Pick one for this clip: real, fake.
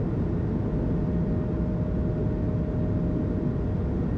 real